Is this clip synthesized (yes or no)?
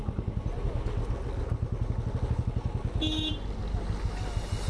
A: no